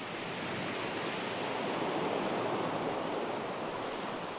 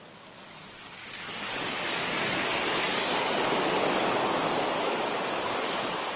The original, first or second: first